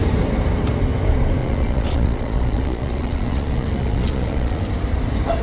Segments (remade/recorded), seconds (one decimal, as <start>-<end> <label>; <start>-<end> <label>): 0.0-1.4 recorded; 1.4-4.6 remade; 4.6-5.4 recorded

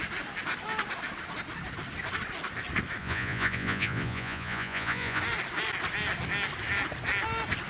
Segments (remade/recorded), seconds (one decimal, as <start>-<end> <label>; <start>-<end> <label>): 0.0-3.0 recorded; 3.0-5.2 remade; 5.2-7.7 recorded

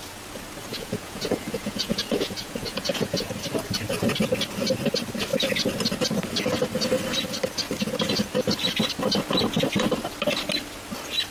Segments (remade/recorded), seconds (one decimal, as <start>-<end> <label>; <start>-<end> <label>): 0.0-0.7 recorded; 0.7-3.3 remade; 3.3-11.3 recorded